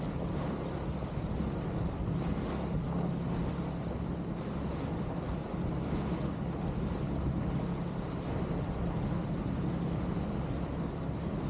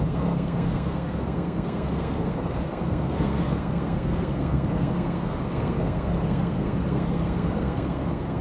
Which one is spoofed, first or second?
second